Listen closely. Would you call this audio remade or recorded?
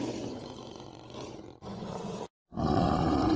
remade